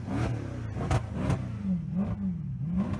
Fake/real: real